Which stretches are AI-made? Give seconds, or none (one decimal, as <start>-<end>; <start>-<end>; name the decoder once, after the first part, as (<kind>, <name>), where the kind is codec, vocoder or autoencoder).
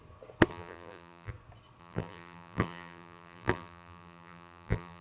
0.5-1.3 (vocoder, BigVGAN v2); 1.8-5.0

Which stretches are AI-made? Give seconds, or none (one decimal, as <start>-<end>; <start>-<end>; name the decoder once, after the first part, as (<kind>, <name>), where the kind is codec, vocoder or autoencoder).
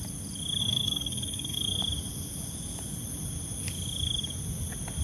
0.6-1.8 (codec, SNAC)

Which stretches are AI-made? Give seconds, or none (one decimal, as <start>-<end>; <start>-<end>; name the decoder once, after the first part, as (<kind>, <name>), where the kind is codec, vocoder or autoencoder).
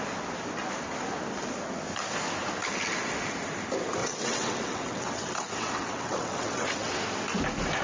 4.0-7.0 (vocoder, WaveNeXt)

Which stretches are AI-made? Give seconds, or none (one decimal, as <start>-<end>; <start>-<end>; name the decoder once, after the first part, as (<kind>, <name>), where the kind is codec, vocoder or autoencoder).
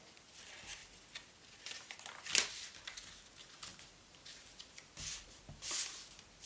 3.7-6.1 (vocoder, BigVGAN v2)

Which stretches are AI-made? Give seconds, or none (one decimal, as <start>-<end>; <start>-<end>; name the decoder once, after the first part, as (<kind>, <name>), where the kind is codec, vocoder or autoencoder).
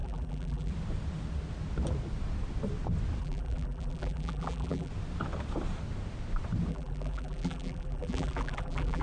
0.0-0.7 (vocoder, BigVGAN v2); 3.2-4.9; 6.7-9.0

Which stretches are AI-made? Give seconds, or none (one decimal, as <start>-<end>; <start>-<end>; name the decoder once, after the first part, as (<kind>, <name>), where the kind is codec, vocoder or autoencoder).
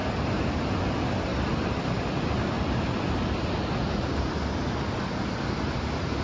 none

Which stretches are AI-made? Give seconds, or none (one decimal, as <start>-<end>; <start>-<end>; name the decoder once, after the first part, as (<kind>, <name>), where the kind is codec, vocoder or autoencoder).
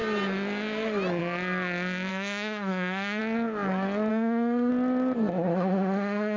2.1-3.2 (autoencoder, DAC-VAE); 4.1-4.7; 5.5-6.4